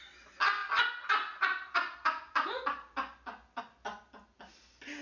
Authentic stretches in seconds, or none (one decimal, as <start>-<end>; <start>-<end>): 0.0-5.0